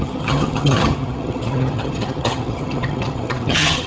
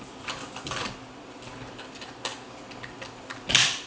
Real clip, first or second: second